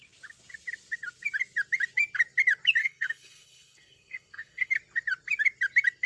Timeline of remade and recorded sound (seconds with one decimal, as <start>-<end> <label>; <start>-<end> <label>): 0.0-2.8 recorded; 2.8-4.7 remade; 4.7-6.1 recorded